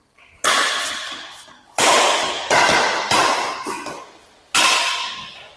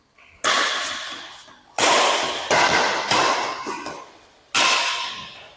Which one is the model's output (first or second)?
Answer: first